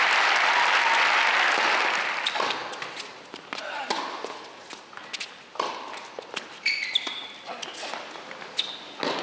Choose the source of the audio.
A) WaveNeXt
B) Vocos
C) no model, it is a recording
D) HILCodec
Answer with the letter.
C